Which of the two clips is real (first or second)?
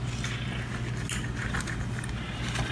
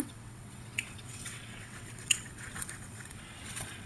first